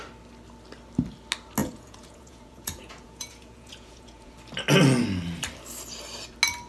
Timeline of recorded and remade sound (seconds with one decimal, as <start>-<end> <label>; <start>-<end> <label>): 0.0-1.6 recorded; 1.6-4.3 remade; 4.3-6.7 recorded